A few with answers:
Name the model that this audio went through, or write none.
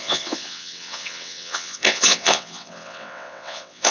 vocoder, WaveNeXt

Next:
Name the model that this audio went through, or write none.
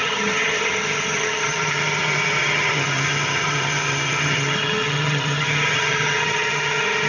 vocoder, HiFi-GAN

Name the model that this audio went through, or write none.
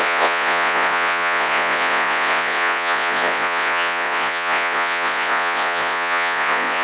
vocoder, Vocos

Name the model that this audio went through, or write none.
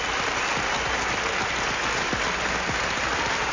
none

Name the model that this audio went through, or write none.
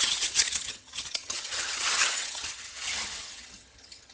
vocoder, HiFi-GAN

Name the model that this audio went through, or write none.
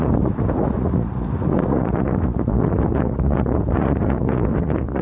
vocoder, Vocos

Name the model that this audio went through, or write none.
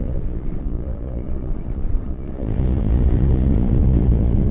vocoder, Vocos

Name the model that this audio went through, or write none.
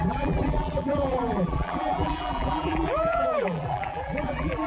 vocoder, BigVGAN v2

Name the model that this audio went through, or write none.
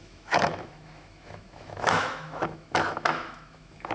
autoencoder, DAC-VAE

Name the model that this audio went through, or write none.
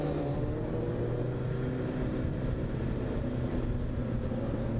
none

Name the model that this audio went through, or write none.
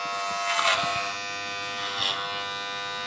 none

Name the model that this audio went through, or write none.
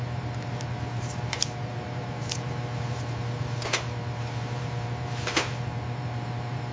vocoder, BigVGAN v2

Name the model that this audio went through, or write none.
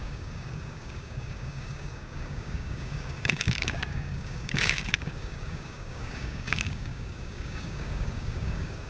codec, DAC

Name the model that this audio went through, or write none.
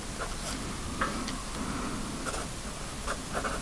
none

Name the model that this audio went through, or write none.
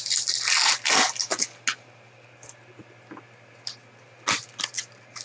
none